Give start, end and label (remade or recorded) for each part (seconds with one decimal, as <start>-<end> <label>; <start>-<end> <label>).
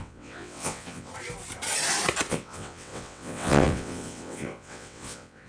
0.0-1.1 remade; 1.1-2.3 recorded; 2.3-5.5 remade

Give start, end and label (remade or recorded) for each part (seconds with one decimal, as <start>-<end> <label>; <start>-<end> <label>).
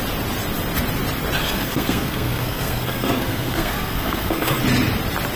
0.0-1.4 recorded; 1.4-4.6 remade; 4.6-5.4 recorded